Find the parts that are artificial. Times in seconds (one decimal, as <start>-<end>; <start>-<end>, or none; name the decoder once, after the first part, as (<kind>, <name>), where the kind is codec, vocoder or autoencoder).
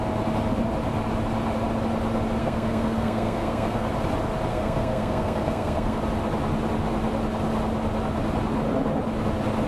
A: 2.4-3.9 (codec, SNAC); 4.5-6.0